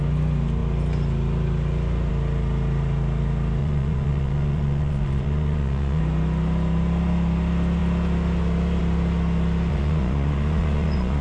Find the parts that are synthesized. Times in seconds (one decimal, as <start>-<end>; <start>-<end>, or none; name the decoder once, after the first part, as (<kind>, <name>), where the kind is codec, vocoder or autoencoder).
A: 3.6-6.0 (vocoder, Vocos); 9.7-11.2